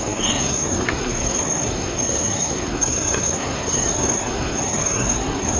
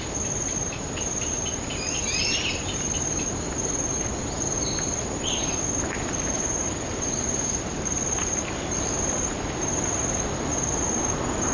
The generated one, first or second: first